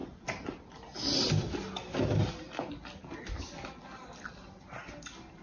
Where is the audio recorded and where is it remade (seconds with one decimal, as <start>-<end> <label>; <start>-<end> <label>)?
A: 0.0-5.4 recorded